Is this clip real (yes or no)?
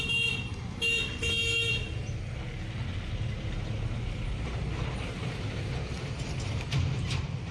yes